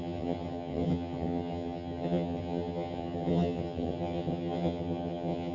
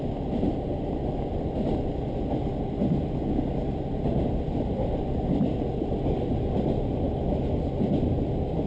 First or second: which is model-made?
first